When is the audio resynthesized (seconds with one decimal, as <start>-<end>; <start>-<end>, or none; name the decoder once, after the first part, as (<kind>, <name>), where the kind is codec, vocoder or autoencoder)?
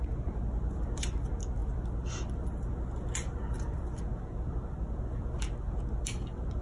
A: none